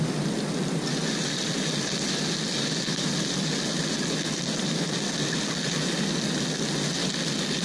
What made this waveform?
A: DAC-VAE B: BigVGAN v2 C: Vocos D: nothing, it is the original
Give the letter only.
D